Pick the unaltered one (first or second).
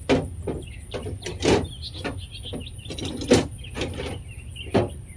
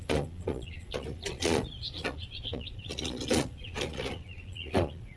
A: first